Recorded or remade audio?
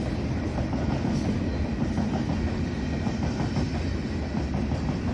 recorded